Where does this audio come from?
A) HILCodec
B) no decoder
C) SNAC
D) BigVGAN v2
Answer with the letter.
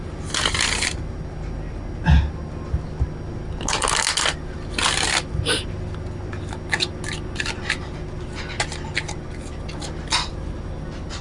B